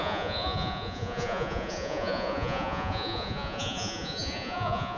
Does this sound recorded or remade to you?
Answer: remade